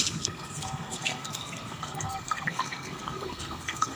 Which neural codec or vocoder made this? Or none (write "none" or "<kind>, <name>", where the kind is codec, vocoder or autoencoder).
codec, SNAC